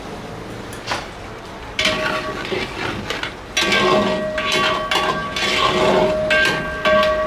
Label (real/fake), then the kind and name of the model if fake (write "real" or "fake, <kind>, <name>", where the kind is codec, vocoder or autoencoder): real